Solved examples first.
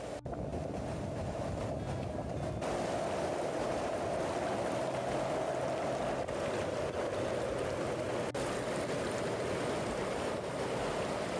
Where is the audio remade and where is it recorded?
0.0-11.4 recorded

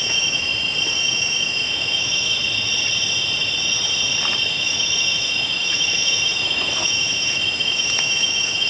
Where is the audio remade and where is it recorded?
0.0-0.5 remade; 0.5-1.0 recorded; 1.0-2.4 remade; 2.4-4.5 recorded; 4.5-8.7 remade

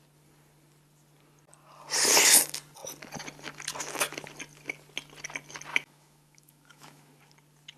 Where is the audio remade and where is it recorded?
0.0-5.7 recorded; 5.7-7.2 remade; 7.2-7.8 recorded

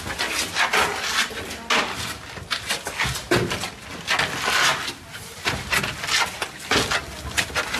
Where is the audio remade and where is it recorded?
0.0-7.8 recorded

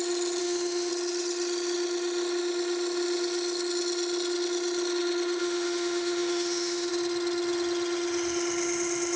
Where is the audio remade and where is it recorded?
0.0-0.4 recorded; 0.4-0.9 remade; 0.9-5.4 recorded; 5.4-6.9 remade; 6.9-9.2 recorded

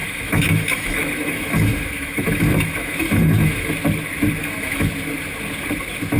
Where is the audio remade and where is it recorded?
0.0-3.7 remade; 3.7-4.4 recorded; 4.4-4.9 remade; 4.9-6.2 recorded

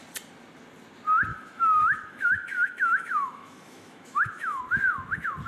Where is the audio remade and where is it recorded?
0.0-1.3 recorded; 1.3-4.6 remade; 4.6-5.5 recorded

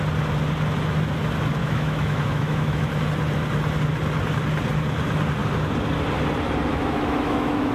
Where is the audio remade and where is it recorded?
0.0-1.6 recorded; 1.6-2.9 remade; 2.9-6.7 recorded; 6.7-7.7 remade